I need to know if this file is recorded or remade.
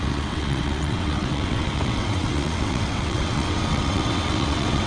remade